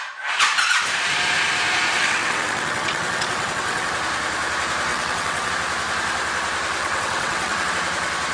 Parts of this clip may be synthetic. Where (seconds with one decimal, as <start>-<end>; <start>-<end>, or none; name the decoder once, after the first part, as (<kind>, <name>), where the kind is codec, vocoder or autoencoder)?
1.9-3.9 (vocoder, WaveNeXt); 4.9-5.5; 6.8-7.7